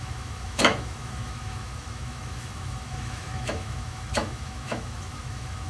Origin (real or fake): fake